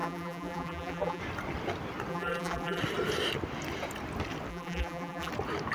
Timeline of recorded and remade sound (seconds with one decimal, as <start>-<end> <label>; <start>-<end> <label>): 0.0-1.2 remade; 1.2-2.1 recorded; 2.1-2.8 remade; 2.8-4.5 recorded; 4.5-5.3 remade; 5.3-5.7 recorded